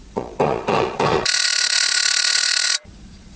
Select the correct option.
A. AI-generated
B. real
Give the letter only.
A